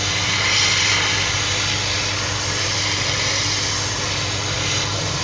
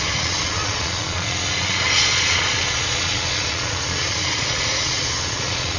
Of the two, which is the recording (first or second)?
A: first